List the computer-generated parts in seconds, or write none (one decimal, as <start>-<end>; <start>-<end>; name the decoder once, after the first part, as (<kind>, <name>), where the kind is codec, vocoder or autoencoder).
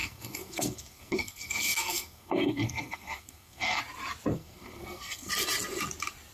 0.0-3.8 (codec, SNAC); 4.3-5.3